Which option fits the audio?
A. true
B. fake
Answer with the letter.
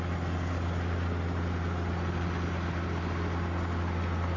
A